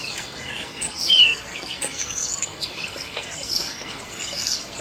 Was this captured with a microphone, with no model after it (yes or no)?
no